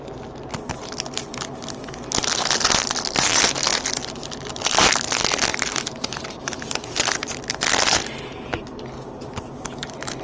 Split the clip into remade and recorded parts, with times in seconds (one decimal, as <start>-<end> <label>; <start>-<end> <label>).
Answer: 0.0-10.2 recorded